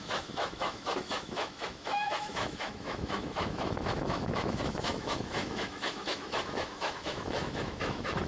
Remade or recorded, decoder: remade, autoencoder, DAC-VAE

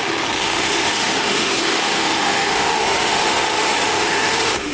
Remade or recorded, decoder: remade, autoencoder, DAC-VAE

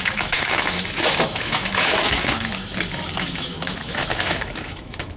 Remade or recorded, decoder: remade, autoencoder, DAC-VAE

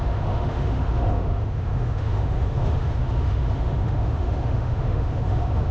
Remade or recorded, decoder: remade, autoencoder, DAC-VAE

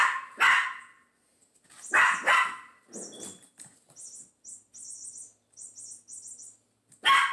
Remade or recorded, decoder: recorded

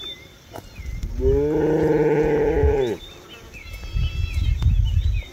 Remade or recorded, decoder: recorded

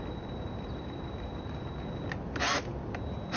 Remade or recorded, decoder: recorded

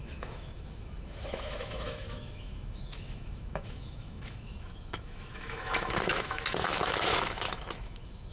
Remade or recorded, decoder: remade, autoencoder, DAC-VAE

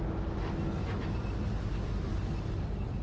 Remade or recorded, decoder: recorded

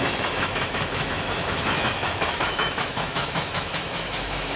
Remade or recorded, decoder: remade, autoencoder, DAC-VAE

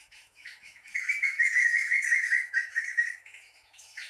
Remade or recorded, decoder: remade, autoencoder, DAC-VAE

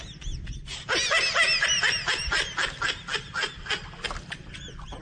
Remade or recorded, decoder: recorded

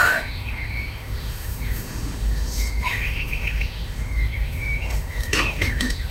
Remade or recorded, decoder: remade, autoencoder, DAC-VAE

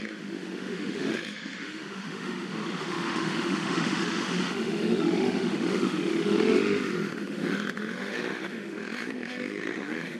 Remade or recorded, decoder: remade, autoencoder, DAC-VAE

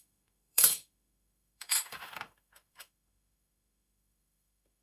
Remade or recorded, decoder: remade, autoencoder, DAC-VAE